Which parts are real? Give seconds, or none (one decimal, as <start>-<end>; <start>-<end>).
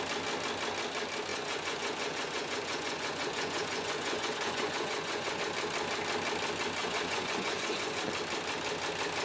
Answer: 0.0-1.3; 5.4-6.8; 8.0-9.2